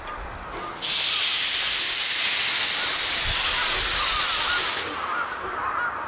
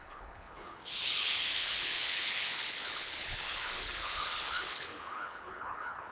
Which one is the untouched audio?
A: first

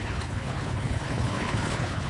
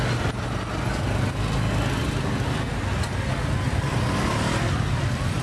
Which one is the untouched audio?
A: second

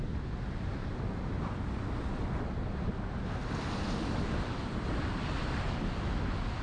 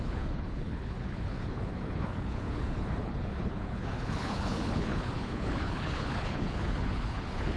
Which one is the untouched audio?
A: first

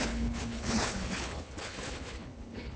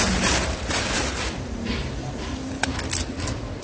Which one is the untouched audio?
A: second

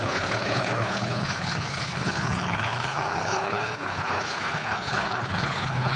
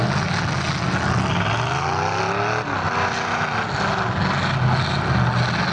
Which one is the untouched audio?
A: second